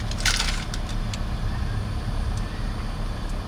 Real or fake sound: real